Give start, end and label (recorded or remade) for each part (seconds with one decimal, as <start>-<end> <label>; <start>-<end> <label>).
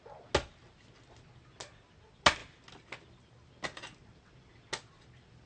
0.0-5.5 recorded